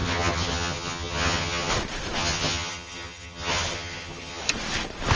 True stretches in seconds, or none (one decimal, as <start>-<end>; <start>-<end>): 1.7-2.2; 4.4-5.2